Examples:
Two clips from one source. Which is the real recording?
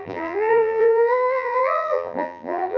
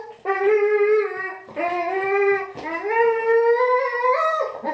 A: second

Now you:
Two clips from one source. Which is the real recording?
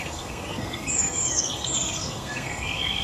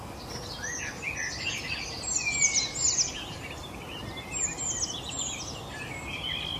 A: second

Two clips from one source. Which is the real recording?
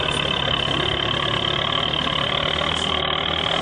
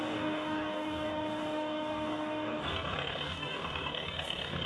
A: first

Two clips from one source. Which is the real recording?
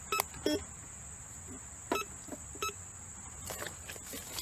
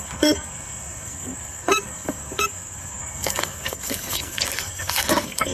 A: first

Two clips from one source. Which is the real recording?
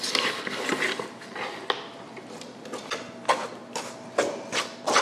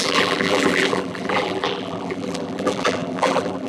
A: first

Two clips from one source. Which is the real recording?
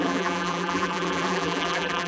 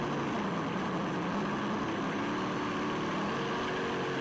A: second